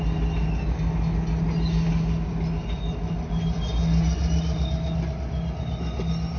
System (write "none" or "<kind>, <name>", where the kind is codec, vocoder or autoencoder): none